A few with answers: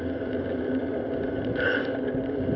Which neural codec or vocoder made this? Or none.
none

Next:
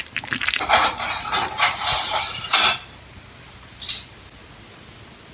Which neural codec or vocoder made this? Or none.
none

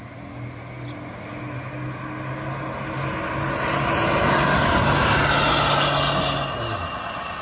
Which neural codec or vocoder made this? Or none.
none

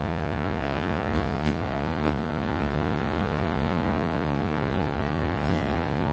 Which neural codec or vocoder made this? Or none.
vocoder, Vocos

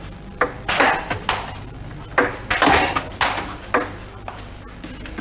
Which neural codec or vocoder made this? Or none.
none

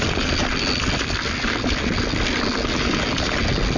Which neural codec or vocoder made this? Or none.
none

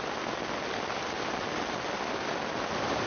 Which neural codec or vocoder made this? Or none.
none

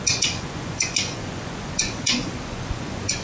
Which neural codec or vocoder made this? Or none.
vocoder, Vocos